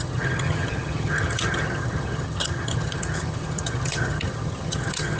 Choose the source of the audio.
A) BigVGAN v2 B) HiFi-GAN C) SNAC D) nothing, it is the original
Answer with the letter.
B